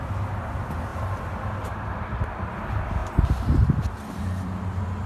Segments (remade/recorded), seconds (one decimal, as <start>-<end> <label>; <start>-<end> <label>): 0.0-5.1 recorded